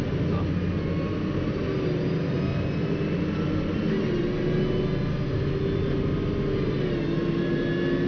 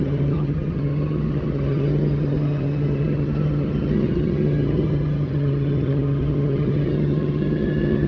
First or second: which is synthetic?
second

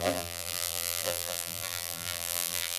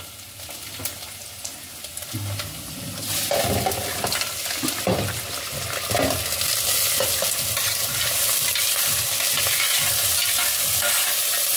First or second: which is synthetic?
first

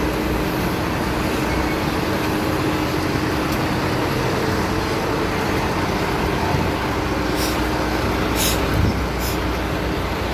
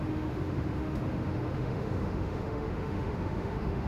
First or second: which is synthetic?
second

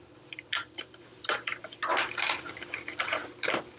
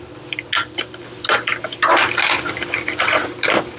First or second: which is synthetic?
first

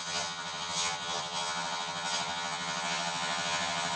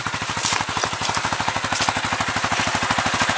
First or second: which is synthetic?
first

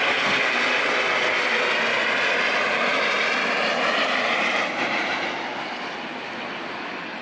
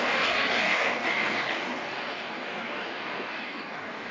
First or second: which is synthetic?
second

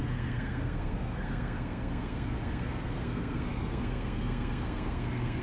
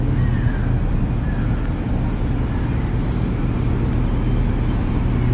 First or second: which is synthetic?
first